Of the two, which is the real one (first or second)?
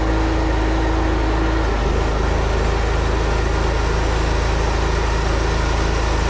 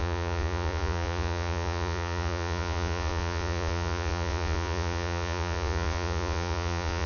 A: first